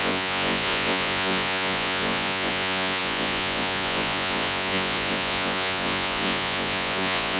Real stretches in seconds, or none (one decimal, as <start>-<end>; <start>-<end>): none

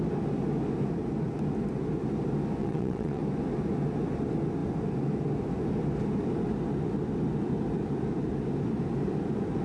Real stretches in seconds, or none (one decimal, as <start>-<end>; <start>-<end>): 0.0-2.6; 3.2-9.6

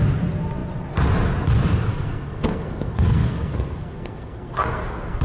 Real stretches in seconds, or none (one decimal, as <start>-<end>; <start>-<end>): 0.0-1.9

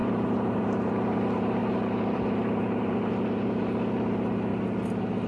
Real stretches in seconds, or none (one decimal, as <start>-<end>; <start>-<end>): 0.6-1.6; 3.1-5.3

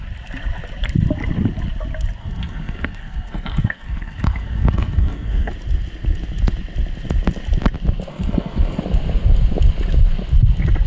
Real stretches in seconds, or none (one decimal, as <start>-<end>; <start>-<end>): 0.0-2.2; 5.5-8.1; 8.8-10.9

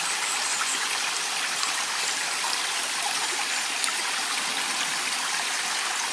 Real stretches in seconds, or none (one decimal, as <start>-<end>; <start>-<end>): 0.0-0.5; 1.0-6.1